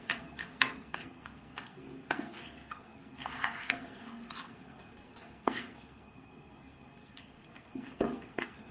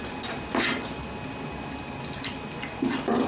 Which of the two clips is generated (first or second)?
first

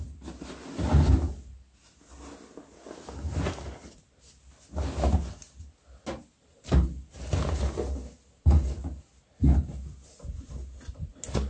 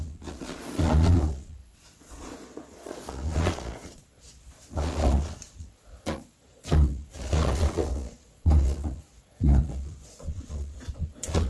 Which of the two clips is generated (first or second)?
second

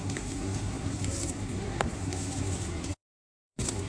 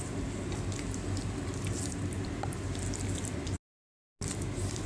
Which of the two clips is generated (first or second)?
first